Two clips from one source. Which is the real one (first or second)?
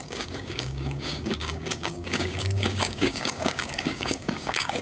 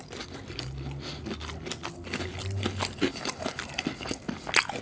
second